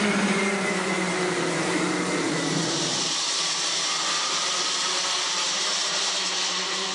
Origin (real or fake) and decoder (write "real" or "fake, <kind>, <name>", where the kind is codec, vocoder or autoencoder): fake, vocoder, BigVGAN v2